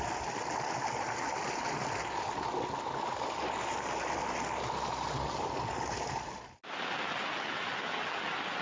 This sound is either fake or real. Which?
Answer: real